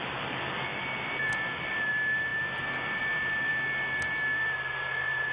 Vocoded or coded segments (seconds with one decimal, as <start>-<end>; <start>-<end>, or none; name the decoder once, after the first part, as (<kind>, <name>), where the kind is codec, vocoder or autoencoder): none

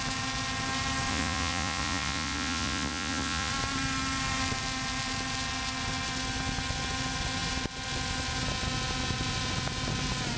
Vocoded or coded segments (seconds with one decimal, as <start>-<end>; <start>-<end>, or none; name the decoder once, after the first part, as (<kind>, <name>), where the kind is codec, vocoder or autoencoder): 1.1-3.5 (vocoder, Vocos)

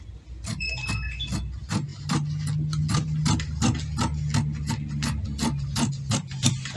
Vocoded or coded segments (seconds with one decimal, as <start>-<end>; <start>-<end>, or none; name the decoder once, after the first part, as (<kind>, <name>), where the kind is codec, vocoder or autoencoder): none

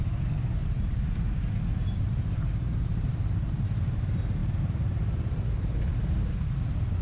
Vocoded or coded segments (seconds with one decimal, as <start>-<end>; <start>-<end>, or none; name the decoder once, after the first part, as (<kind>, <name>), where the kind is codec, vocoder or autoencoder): 0.6-1.1 (vocoder, BigVGAN v2); 1.7-4.0

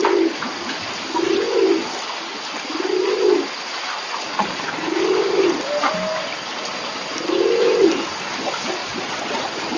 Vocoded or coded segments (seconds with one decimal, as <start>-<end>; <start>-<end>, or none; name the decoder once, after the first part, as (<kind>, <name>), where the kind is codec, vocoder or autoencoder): 8.8-9.4 (vocoder, Vocos)